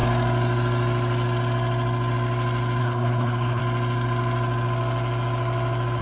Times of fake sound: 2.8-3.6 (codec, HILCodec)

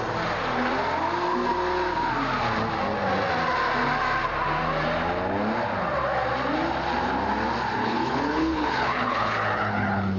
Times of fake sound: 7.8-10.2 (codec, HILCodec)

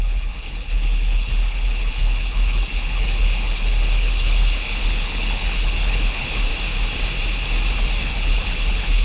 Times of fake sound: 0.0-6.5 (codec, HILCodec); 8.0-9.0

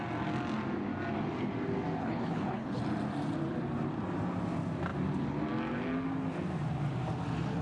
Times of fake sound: 2.0-2.8 (codec, HILCodec)